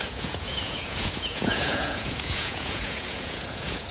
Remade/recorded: remade